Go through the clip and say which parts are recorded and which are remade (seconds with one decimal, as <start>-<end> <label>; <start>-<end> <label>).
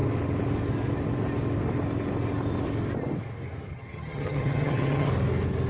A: 0.0-3.7 recorded; 3.7-5.1 remade; 5.1-5.7 recorded